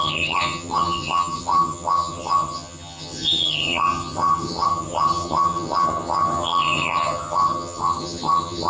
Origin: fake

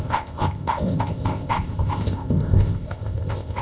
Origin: fake